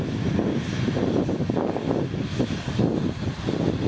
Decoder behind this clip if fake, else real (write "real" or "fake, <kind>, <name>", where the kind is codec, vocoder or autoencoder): real